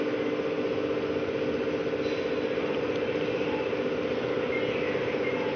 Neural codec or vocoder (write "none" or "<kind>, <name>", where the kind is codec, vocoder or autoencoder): none